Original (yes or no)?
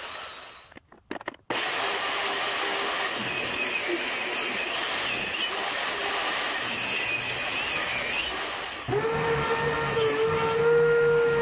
yes